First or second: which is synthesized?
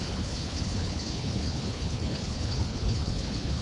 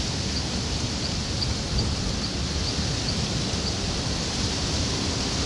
first